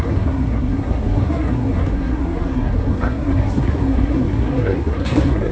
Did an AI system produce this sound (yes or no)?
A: yes